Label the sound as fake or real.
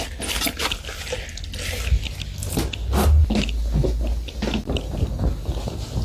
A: real